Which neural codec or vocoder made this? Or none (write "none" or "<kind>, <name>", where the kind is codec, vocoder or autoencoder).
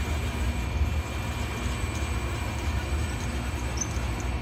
none